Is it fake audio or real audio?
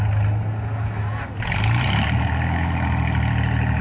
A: real